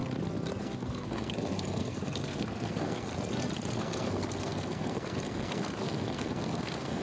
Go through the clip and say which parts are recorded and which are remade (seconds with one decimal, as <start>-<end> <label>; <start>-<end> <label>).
0.0-0.6 recorded; 0.6-3.1 remade; 3.1-3.7 recorded; 3.7-7.0 remade